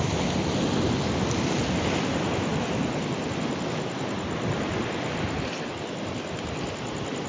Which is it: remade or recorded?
recorded